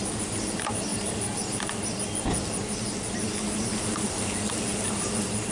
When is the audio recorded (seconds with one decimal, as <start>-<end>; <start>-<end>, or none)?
0.0-5.5